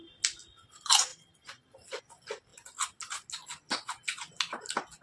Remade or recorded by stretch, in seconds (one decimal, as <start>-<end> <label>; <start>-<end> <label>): 0.0-1.1 recorded; 1.1-2.0 remade; 2.0-5.0 recorded